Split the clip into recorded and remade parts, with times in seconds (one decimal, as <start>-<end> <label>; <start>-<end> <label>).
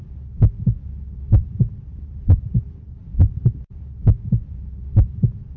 0.0-0.5 remade; 0.5-1.4 recorded; 1.4-4.8 remade; 4.8-5.6 recorded